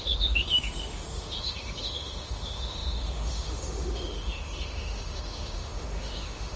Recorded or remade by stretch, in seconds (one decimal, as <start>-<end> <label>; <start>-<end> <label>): 0.0-6.6 remade